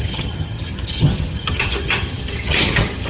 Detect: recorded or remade remade